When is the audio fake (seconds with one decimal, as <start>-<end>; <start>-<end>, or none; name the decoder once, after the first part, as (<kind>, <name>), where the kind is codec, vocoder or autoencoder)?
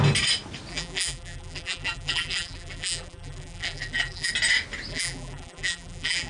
0.7-4.3 (vocoder, BigVGAN v2); 4.9-6.3